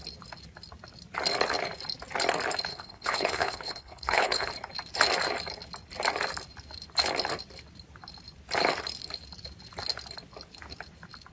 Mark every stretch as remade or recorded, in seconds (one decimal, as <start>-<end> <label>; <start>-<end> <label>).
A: 0.0-2.7 recorded; 2.7-4.5 remade; 4.5-11.3 recorded